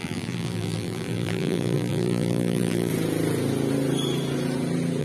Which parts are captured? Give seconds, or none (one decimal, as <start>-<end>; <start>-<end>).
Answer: 2.9-5.0